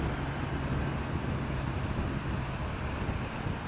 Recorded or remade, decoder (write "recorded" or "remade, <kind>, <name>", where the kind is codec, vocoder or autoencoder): recorded